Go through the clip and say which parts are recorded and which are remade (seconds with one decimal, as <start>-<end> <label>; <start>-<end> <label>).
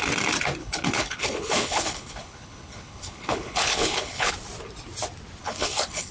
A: 0.0-0.6 recorded; 0.6-4.3 remade; 4.3-5.4 recorded; 5.4-6.1 remade